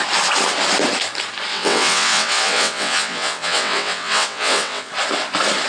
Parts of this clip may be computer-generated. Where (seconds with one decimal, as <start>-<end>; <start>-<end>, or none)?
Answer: 1.5-4.9